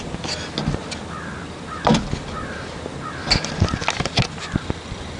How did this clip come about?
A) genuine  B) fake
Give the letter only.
A